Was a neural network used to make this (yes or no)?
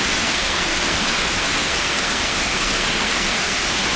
yes